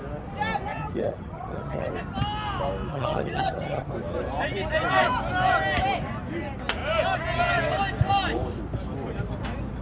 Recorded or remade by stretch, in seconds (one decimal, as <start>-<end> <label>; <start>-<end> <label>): 0.0-0.7 recorded; 0.7-1.9 remade; 1.9-2.9 recorded; 2.9-3.9 remade; 3.9-9.8 recorded